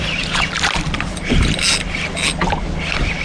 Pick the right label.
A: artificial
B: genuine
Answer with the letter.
B